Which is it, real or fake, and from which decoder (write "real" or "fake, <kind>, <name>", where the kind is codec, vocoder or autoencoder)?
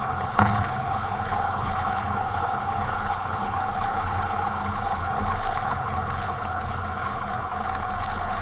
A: fake, codec, HILCodec